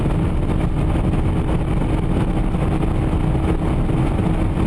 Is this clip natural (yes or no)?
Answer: yes